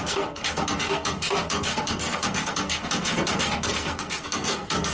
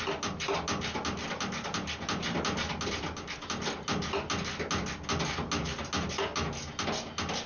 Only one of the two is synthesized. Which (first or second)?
first